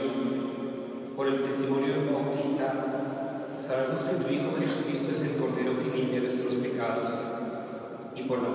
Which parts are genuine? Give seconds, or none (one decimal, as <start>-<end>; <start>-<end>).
0.0-1.9; 4.7-7.4